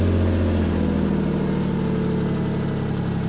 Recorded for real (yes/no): yes